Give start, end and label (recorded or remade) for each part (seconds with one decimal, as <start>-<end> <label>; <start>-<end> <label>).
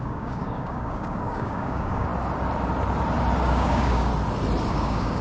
0.0-2.1 remade; 2.1-3.4 recorded; 3.4-4.1 remade; 4.1-4.7 recorded; 4.7-5.2 remade